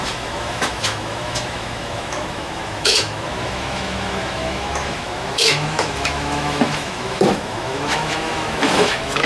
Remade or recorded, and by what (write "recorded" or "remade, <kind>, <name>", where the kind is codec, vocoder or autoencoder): remade, autoencoder, DAC-VAE